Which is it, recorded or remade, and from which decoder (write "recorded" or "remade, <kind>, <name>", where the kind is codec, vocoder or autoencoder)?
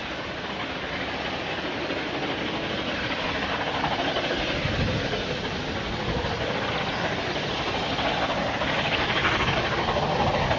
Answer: recorded